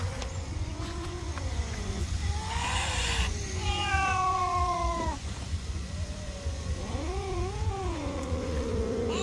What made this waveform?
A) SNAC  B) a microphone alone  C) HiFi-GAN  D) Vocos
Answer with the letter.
D